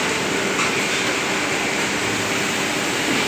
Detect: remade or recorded recorded